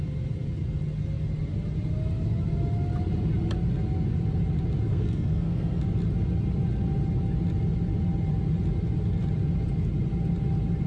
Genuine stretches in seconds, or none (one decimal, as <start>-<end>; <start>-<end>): 0.0-4.9; 5.8-10.9